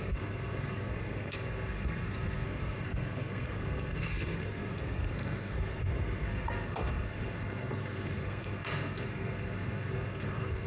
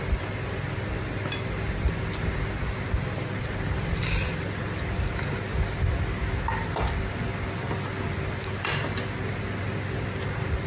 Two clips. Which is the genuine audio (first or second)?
second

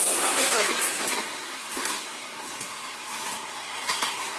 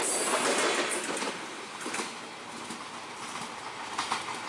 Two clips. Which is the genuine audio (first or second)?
second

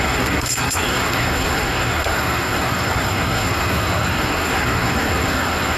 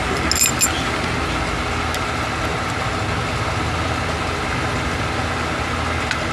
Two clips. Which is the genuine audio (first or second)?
second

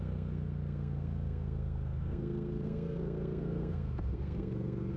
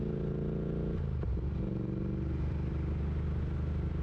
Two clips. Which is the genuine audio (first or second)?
second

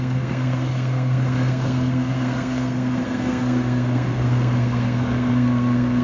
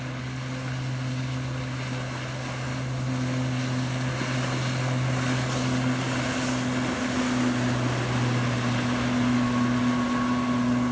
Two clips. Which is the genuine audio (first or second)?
second